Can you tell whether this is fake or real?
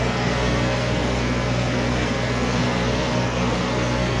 fake